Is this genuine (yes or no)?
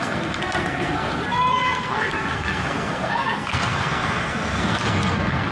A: no